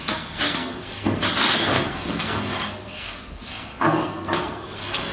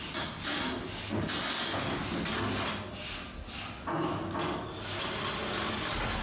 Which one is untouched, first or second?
second